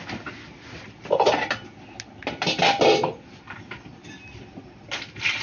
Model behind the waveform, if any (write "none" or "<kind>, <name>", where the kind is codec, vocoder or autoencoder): none